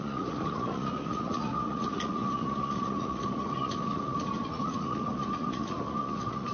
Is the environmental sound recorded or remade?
remade